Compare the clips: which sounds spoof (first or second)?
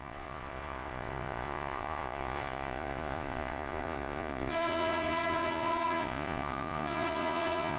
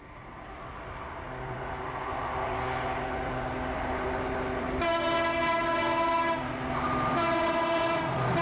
first